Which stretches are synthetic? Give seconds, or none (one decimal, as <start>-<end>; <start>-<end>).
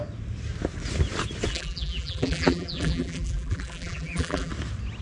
1.5-4.5